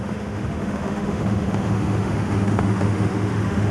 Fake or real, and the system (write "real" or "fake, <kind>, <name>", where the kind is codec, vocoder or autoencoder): fake, autoencoder, DAC-VAE